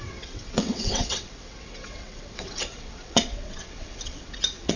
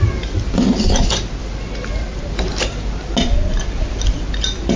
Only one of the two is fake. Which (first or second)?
first